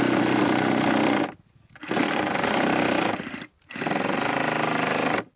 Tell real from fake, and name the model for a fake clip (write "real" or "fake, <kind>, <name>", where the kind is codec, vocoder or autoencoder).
real